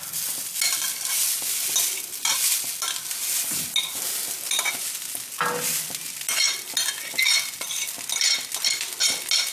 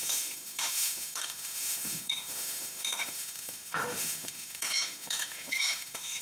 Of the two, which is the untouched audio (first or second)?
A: first